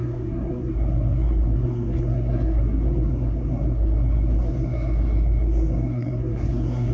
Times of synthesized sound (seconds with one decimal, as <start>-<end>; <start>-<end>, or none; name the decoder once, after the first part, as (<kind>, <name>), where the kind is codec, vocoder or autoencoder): 0.0-6.9 (codec, SNAC)